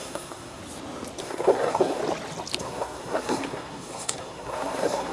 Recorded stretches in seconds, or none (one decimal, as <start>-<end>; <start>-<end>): 0.6-1.2; 2.0-2.6